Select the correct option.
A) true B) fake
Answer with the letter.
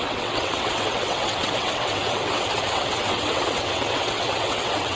B